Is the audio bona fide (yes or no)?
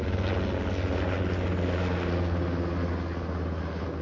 yes